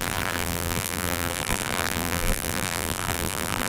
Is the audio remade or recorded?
remade